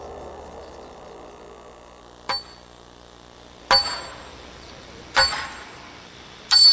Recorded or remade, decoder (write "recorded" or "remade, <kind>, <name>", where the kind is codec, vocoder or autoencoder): recorded